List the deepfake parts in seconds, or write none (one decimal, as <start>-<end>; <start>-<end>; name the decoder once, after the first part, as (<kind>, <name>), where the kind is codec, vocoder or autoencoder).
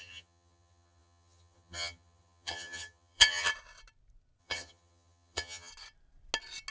0.0-3.5 (vocoder, HiFi-GAN); 4.4-5.7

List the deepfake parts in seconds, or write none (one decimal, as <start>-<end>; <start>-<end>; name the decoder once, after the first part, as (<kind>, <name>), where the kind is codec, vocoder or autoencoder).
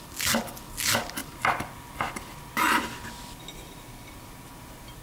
none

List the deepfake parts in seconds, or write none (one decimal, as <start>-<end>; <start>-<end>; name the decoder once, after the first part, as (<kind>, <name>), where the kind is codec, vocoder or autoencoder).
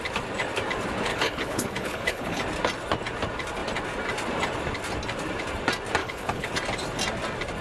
1.1-2.4 (codec, HILCodec); 6.0-6.5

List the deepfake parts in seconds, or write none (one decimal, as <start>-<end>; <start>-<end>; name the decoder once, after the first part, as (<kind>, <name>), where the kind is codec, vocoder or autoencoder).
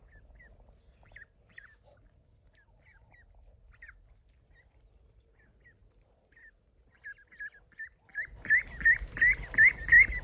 none